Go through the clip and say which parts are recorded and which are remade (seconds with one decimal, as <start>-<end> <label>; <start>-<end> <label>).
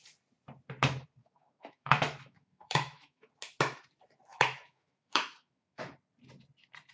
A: 0.0-1.2 recorded; 1.2-3.3 remade; 3.3-4.3 recorded; 4.3-5.9 remade; 5.9-6.9 recorded